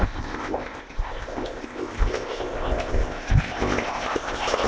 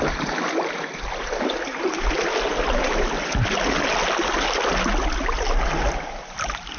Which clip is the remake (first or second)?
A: first